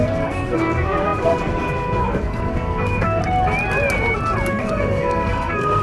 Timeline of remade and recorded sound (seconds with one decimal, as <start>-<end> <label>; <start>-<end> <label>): 0.0-3.2 remade; 3.2-4.5 recorded; 4.5-5.8 remade